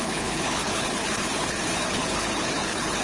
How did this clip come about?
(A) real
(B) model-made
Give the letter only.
B